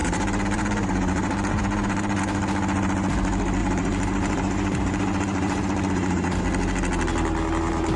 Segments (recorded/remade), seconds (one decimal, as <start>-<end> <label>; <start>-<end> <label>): 0.0-2.2 remade; 2.2-3.6 recorded; 3.6-6.4 remade; 6.4-8.0 recorded